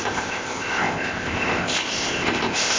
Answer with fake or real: fake